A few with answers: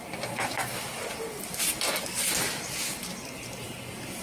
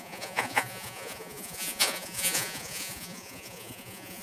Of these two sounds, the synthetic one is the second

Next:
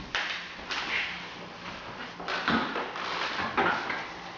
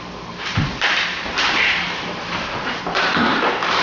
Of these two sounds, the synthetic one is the second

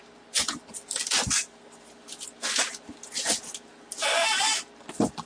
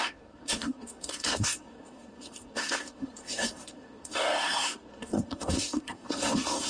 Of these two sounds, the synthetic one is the second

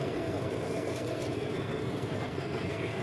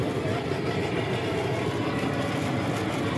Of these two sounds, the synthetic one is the first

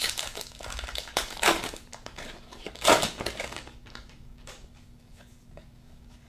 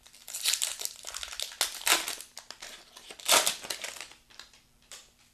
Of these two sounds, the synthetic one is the first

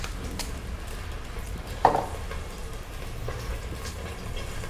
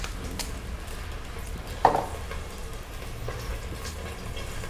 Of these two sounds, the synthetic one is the first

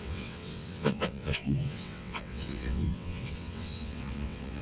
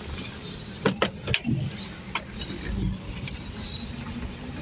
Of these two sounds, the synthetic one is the first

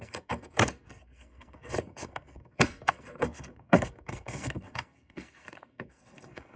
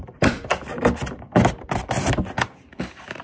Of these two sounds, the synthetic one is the first